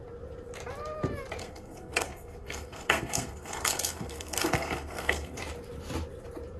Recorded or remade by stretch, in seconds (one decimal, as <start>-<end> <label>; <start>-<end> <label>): 0.0-1.4 recorded; 1.4-5.4 remade; 5.4-6.6 recorded